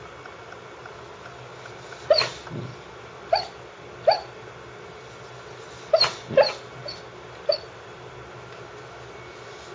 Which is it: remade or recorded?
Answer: recorded